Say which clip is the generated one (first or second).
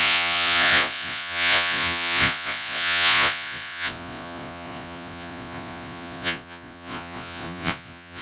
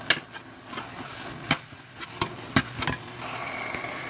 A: first